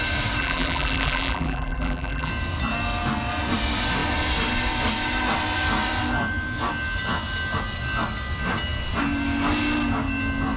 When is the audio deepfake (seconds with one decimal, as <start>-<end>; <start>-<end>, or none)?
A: 0.4-2.3